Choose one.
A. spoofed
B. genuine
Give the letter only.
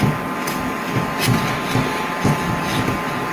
B